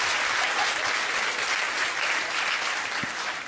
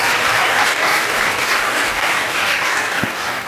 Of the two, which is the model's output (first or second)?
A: second